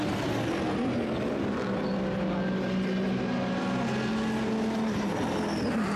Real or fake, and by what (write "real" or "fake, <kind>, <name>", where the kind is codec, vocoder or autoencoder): real